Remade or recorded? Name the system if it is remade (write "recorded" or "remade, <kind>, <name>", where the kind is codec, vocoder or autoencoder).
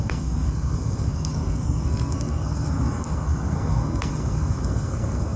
remade, codec, SNAC